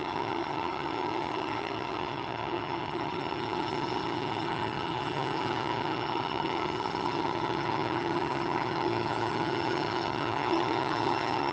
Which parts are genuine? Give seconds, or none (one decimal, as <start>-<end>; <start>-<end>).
none

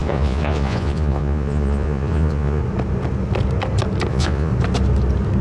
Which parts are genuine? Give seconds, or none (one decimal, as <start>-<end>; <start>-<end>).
2.6-4.1; 4.5-5.4

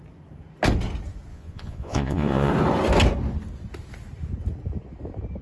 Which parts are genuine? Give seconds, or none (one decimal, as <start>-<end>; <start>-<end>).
0.0-1.3; 2.5-5.4

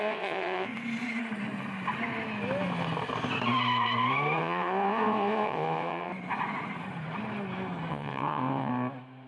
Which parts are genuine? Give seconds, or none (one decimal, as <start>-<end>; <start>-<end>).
0.7-4.4; 6.1-7.9; 8.7-9.3

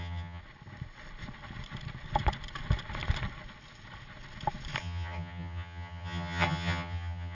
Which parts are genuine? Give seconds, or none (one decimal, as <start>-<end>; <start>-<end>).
0.4-4.8

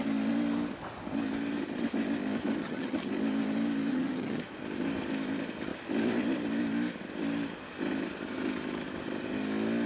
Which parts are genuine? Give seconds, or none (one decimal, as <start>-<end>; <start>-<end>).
0.0-2.6; 3.1-3.9; 4.4-9.9

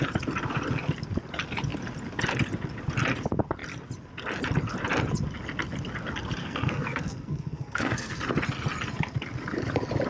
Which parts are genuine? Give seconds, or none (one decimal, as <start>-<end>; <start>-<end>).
0.0-6.4; 8.2-10.1

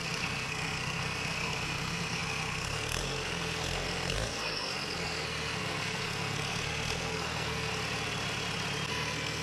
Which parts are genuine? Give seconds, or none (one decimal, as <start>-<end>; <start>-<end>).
7.7-8.9